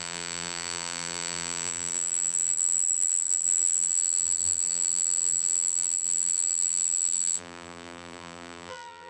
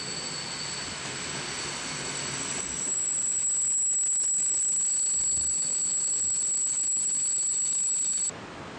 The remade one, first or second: first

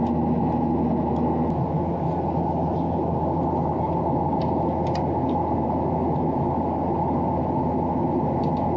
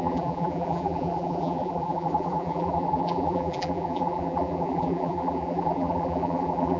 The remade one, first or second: second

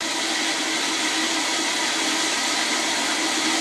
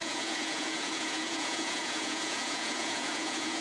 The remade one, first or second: second